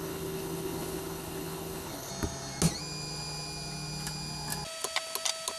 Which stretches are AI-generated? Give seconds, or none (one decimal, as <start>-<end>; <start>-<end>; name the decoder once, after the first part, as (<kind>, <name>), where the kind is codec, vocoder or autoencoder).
0.0-2.1 (codec, HILCodec)